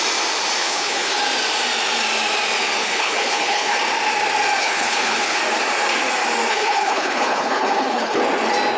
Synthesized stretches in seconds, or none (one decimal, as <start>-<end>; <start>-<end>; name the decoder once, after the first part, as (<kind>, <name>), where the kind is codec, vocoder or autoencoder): 0.6-1.2 (codec, HILCodec); 2.8-3.8; 4.6-5.4; 6.5-8.2